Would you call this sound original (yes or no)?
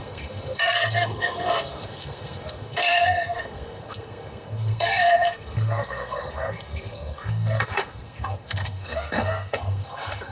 no